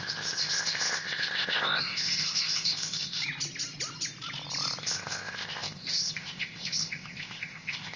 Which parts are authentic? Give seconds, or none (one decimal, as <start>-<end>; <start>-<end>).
3.2-4.8